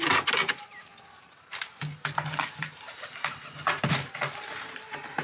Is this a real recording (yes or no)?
no